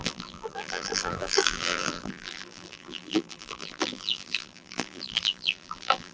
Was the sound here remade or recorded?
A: remade